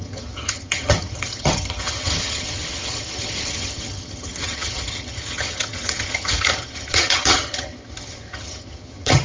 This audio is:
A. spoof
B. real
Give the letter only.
A